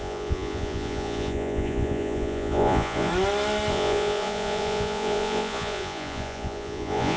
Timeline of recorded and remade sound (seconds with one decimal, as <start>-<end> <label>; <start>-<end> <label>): 0.0-3.1 remade; 3.1-3.7 recorded; 3.7-7.2 remade